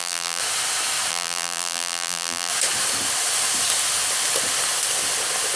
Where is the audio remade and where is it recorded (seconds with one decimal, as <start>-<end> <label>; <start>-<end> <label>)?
0.0-0.4 remade; 0.4-1.1 recorded; 1.1-2.5 remade; 2.5-5.6 recorded